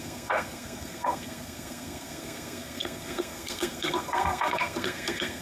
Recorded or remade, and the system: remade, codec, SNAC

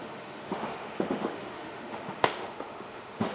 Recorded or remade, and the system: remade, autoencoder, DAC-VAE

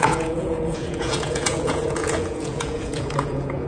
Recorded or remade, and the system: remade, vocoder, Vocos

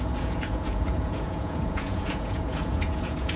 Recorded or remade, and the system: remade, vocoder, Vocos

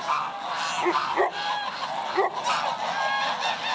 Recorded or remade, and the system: recorded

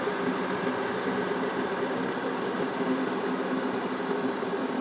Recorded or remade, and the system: recorded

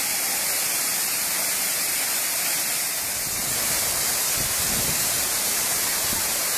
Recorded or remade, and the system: remade, vocoder, BigVGAN v2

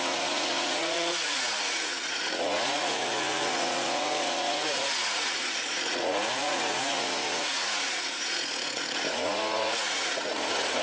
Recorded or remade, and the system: remade, vocoder, Vocos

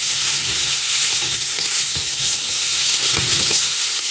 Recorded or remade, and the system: remade, codec, SNAC